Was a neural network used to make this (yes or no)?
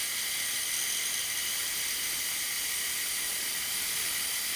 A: no